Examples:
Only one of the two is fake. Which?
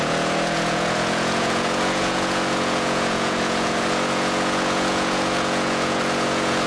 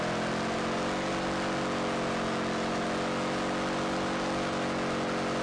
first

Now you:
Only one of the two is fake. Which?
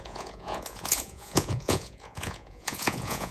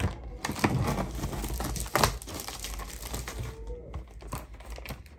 first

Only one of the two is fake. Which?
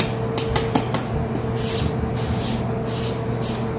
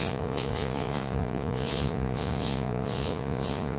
second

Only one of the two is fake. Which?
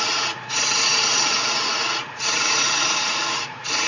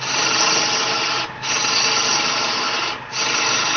first